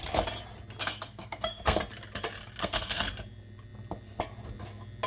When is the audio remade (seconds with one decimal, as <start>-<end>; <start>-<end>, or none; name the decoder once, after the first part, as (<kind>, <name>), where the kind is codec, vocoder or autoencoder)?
0.8-1.8 (codec, SNAC); 2.6-3.1